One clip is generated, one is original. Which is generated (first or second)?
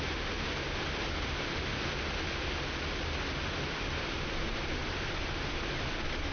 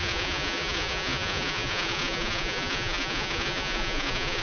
second